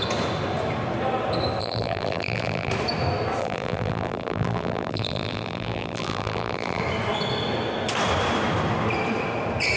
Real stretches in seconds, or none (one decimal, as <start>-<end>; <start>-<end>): 0.0-1.6; 2.7-3.4; 6.8-9.8